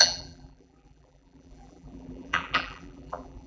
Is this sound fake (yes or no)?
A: yes